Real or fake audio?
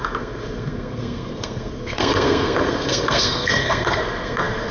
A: fake